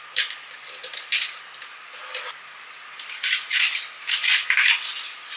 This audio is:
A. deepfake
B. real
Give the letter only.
B